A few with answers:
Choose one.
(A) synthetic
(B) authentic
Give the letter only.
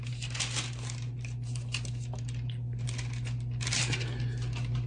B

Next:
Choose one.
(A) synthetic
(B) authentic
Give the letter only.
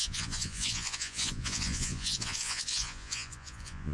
A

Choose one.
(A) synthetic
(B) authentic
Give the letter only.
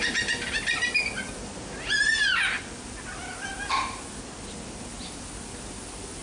B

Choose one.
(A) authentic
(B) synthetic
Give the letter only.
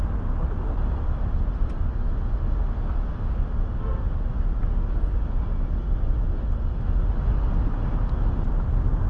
A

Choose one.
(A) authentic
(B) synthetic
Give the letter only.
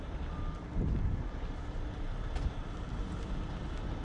A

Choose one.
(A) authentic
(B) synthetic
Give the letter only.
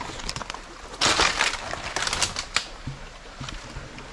A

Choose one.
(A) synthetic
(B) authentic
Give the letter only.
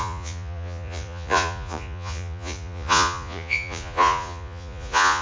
A